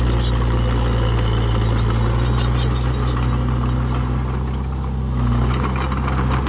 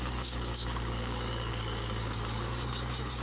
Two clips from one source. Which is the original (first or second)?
first